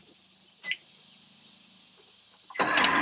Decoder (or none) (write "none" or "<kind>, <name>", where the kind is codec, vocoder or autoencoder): none